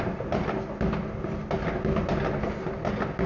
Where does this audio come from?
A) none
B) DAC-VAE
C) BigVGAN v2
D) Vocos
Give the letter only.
A